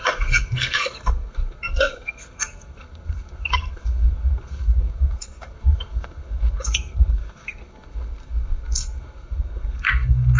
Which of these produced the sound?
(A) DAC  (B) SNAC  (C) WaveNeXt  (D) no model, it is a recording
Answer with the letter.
B